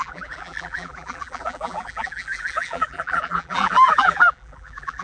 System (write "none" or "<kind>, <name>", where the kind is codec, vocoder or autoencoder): vocoder, BigVGAN v2